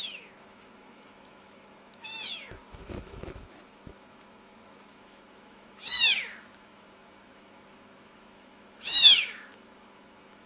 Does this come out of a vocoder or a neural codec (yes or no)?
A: yes